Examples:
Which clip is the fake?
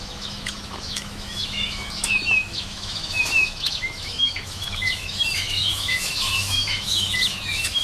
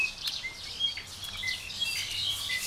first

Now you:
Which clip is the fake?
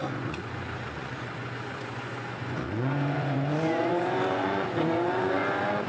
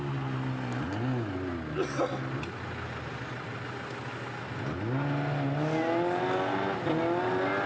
first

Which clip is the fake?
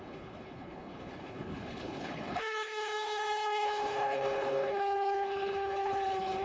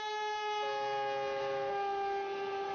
first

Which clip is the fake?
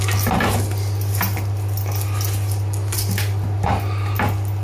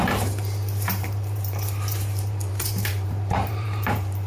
second